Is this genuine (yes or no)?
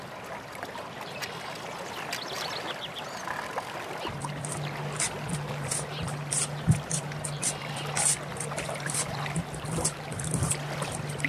yes